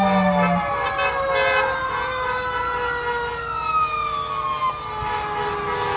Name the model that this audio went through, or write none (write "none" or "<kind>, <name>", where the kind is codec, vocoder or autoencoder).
none